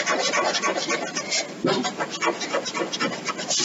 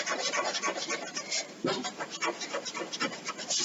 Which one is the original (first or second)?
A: first